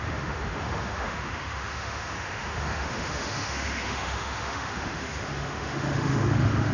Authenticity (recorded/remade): remade